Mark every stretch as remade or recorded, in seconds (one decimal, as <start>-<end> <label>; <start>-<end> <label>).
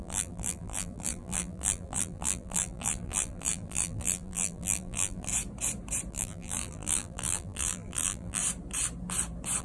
0.0-5.3 remade; 5.3-6.1 recorded; 6.1-8.4 remade; 8.4-9.6 recorded